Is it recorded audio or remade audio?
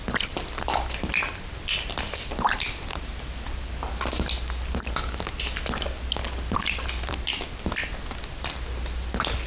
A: recorded